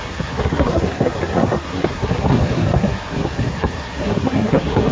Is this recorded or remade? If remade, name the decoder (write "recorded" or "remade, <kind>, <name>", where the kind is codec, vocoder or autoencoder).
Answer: remade, codec, SNAC